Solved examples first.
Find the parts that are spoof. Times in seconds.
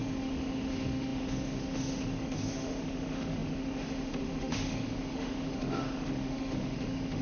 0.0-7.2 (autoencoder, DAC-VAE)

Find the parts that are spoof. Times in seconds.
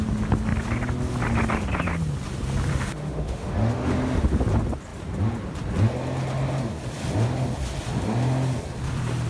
2.7-3.9 (autoencoder, DAC-VAE)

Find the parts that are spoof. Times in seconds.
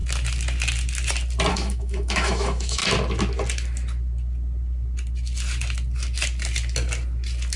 1.5-2.8 (autoencoder, DAC-VAE)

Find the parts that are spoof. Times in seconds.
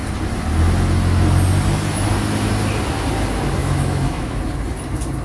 3.6-4.4 (autoencoder, DAC-VAE)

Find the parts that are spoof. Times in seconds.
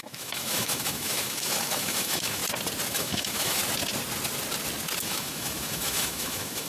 0.0-2.4 (autoencoder, DAC-VAE); 2.9-3.6; 5.0-6.7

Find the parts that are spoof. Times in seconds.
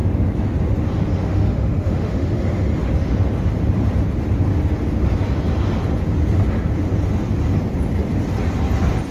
1.2-2.9 (autoencoder, DAC-VAE)